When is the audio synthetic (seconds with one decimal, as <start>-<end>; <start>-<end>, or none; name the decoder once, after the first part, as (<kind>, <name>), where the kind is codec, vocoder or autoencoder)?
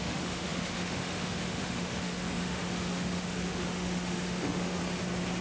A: 0.0-4.8 (autoencoder, DAC-VAE)